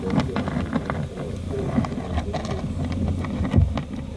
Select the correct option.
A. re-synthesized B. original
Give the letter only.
B